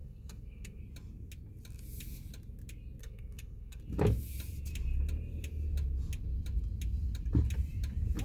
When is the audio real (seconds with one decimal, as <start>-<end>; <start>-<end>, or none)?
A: 0.8-3.0; 3.8-8.2